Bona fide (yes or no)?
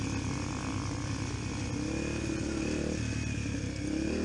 yes